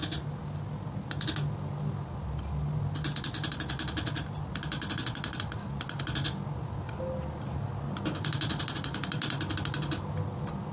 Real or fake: real